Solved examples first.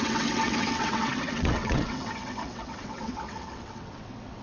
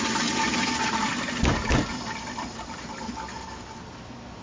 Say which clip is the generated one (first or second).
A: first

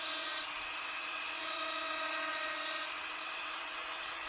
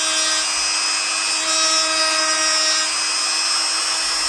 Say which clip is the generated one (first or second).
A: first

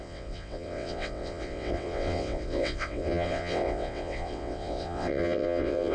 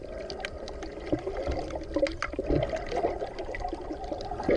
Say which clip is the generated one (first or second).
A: first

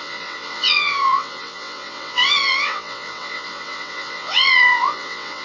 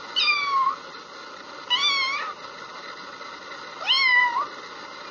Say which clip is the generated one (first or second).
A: first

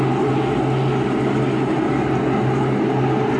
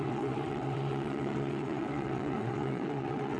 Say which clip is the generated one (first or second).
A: second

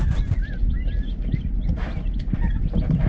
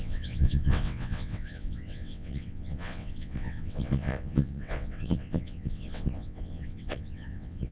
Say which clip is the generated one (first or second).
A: second